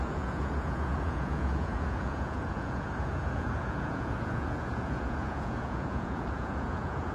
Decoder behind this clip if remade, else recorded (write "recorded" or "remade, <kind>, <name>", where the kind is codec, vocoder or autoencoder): remade, vocoder, Vocos